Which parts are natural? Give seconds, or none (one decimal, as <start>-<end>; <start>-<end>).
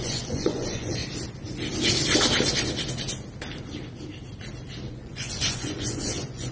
1.0-4.9